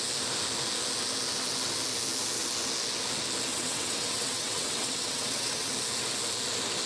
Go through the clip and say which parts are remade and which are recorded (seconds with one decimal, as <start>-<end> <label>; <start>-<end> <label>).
0.0-3.5 recorded; 3.5-5.7 remade; 5.7-6.9 recorded